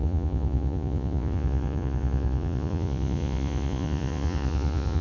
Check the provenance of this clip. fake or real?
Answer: fake